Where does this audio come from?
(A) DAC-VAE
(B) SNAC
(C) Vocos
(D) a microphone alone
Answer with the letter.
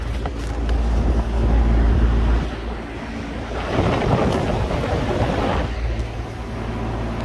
D